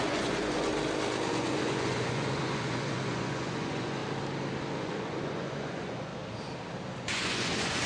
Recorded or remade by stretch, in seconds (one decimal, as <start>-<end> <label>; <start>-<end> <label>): 0.0-0.7 remade; 0.7-1.3 recorded; 1.3-4.0 remade; 4.0-4.8 recorded; 4.8-6.1 remade; 6.1-7.0 recorded; 7.0-7.9 remade